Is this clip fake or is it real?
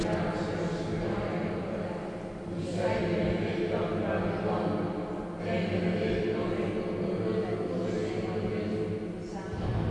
real